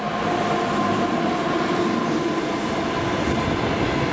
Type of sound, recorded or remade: recorded